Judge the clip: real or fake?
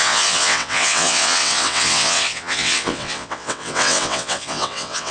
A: fake